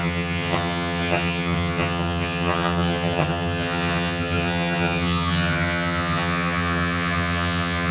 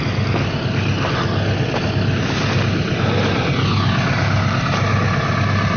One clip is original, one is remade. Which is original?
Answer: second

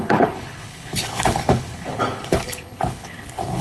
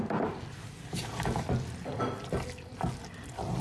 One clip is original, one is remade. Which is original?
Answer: second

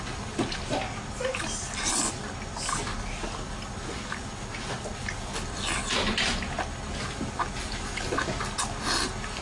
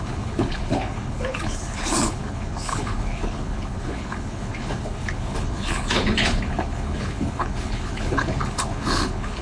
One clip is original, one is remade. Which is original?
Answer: first